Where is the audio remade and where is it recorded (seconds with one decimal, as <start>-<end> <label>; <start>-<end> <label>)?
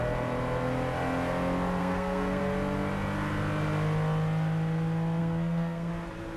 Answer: 0.0-1.8 recorded; 1.8-2.4 remade; 2.4-5.2 recorded; 5.2-5.9 remade; 5.9-6.4 recorded